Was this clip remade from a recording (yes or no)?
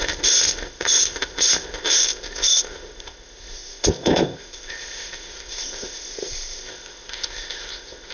yes